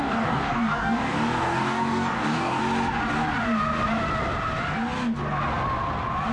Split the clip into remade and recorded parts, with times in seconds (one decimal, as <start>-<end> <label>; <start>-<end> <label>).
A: 0.0-2.6 remade; 2.6-6.3 recorded